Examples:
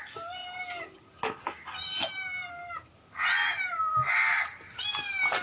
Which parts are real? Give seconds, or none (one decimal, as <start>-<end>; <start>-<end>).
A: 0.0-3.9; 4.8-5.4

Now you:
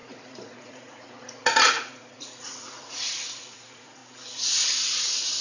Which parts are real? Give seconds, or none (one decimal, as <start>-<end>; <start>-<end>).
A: 4.0-5.0

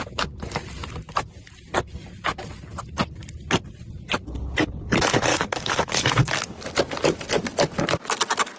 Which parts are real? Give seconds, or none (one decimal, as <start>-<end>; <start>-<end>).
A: 0.0-5.3; 6.6-8.6